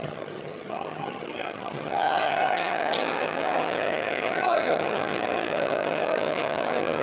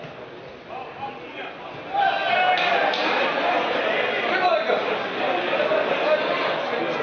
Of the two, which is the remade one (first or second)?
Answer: first